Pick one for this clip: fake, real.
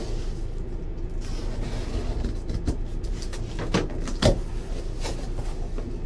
real